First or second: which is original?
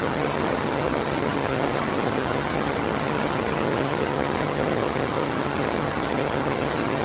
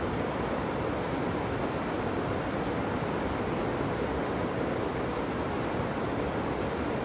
second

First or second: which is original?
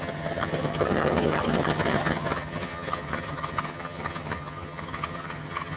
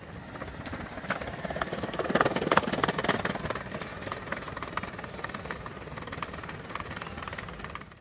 second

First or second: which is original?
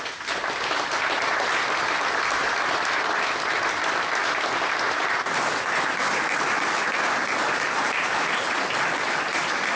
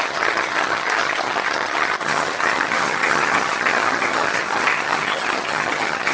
first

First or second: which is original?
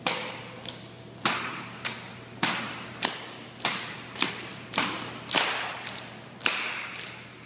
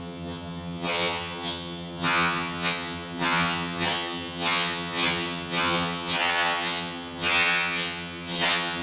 first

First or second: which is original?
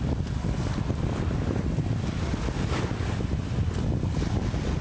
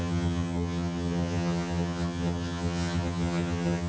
first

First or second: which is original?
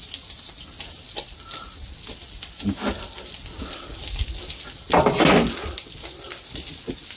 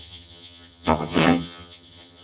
first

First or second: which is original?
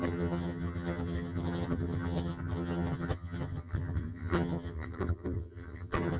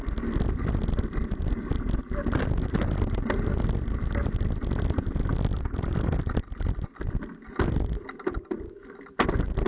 second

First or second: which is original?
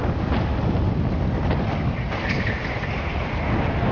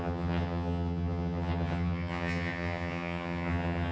first